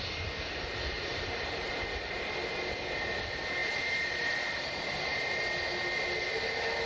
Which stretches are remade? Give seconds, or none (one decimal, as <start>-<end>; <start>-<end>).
1.1-1.7; 3.6-5.3